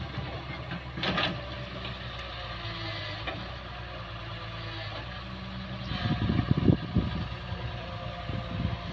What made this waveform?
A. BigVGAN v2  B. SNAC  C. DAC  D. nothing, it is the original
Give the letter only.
D